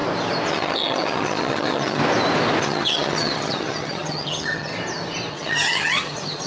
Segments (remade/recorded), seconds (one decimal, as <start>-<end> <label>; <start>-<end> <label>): 0.0-0.5 recorded; 0.5-2.0 remade; 2.0-2.6 recorded; 2.6-4.7 remade; 4.7-5.3 recorded; 5.3-6.5 remade